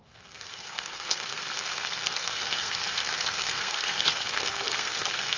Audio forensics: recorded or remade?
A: remade